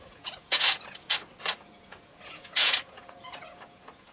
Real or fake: fake